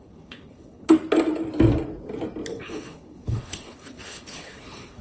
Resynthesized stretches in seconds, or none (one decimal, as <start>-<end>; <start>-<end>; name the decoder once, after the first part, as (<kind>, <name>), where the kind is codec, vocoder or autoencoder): 0.0-0.9 (codec, HILCodec); 2.5-5.0